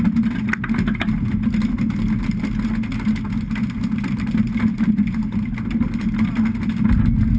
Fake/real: real